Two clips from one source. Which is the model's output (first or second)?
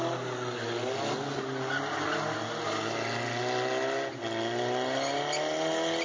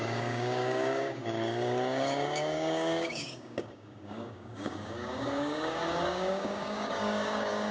second